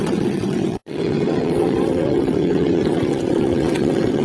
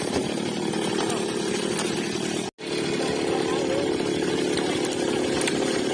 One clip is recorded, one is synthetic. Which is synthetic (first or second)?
first